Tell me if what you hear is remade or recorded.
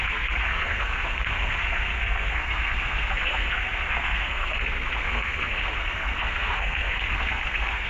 remade